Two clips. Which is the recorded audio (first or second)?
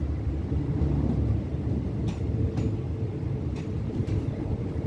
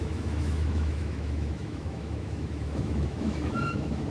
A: first